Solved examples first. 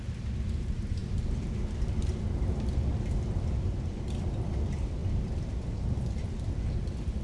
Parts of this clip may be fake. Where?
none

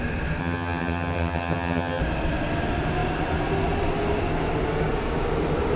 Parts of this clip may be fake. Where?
0.4-2.0 (vocoder, HiFi-GAN)